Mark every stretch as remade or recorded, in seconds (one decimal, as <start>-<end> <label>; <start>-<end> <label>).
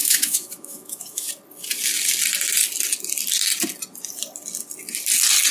0.0-1.3 remade; 1.3-5.5 recorded